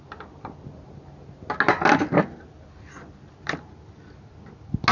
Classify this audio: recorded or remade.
recorded